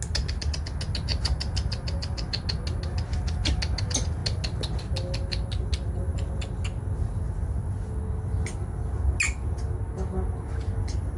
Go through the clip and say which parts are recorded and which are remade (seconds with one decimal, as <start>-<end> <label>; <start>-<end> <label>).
0.0-11.2 recorded